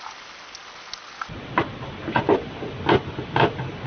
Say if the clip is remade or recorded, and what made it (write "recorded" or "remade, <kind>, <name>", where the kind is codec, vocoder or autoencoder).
recorded